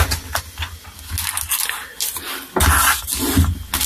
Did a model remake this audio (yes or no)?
no